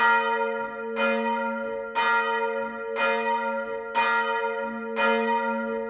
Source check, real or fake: real